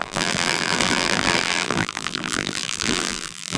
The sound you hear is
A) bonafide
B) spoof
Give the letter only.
B